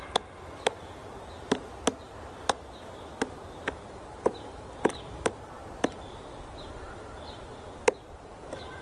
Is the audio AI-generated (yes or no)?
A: no